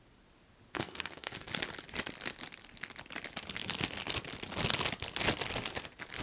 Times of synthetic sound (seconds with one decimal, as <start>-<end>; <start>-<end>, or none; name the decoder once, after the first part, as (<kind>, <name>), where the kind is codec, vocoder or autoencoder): 0.7-1.5 (codec, SNAC)